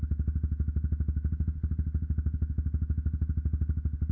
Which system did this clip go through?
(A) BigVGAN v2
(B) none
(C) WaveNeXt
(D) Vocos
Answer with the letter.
B